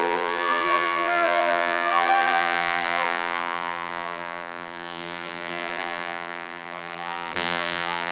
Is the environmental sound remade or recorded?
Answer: remade